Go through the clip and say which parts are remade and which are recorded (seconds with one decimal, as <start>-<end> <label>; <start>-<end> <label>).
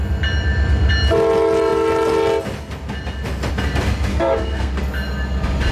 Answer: 0.0-4.1 recorded; 4.1-4.8 remade; 4.8-5.7 recorded